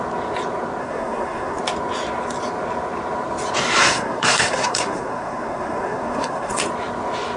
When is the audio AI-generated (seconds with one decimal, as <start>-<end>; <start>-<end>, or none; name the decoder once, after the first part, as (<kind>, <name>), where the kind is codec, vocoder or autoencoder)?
0.8-1.6 (codec, SNAC); 3.8-6.6